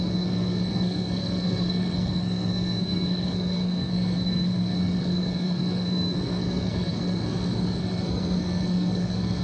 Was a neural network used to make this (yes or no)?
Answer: yes